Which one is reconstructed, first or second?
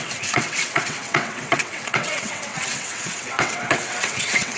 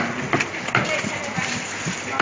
first